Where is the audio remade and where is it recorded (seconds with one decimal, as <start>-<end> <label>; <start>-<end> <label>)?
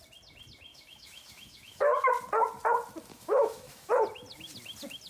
0.0-0.7 recorded; 0.7-2.1 remade; 2.1-3.1 recorded; 3.1-3.9 remade; 3.9-5.1 recorded